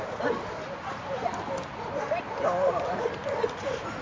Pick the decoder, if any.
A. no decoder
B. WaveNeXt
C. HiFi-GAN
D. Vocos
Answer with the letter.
A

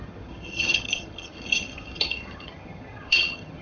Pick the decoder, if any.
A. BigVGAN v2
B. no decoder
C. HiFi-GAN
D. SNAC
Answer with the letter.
C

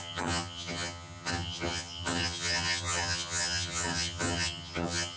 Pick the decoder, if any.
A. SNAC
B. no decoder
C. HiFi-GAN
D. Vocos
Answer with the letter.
C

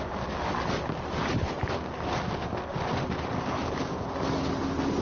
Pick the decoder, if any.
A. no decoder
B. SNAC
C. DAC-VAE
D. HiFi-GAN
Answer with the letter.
A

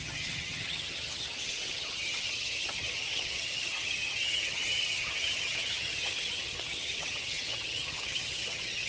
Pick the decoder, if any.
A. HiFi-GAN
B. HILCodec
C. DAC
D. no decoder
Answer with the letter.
A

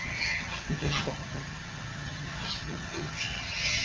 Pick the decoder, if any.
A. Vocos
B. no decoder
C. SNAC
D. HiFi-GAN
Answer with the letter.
D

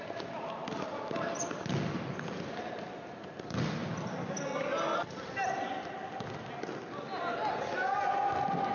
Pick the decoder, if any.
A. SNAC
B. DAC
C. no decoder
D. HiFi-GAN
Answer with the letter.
C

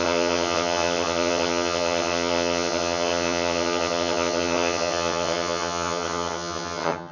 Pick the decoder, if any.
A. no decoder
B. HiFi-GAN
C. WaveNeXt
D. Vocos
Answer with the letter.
B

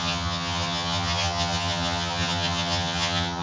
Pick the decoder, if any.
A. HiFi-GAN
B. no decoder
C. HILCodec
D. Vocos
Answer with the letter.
A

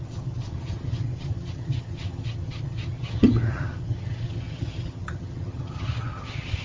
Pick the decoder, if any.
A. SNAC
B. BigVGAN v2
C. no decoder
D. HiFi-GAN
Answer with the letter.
D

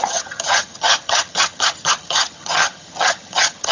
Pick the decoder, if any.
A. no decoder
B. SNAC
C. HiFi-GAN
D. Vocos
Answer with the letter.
C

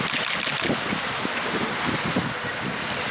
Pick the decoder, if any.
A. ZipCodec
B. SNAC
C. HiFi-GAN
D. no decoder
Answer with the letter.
D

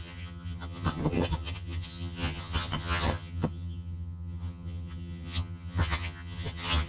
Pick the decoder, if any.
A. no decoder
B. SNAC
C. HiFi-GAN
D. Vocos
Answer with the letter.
C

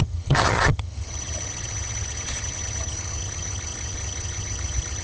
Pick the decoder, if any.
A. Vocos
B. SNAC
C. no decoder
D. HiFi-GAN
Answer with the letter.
D